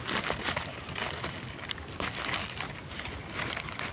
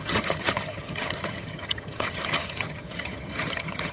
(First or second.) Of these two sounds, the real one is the first